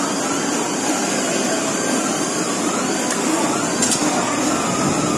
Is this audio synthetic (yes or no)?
no